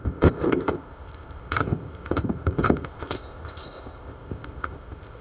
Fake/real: fake